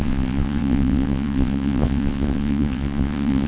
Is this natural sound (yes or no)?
no